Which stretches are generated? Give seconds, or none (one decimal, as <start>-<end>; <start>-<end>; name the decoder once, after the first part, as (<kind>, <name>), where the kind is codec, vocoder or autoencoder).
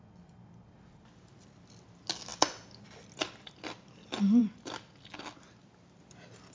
none